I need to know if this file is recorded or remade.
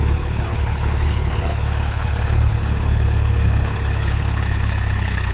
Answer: remade